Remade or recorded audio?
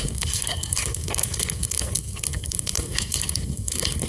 remade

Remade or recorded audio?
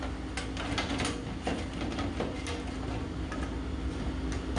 recorded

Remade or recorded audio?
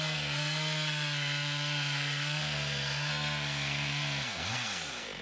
remade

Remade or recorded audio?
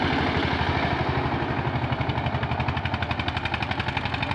recorded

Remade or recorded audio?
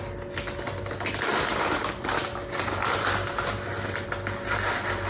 recorded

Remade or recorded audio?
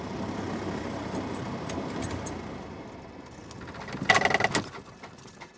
recorded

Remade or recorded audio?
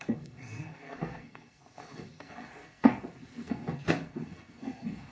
remade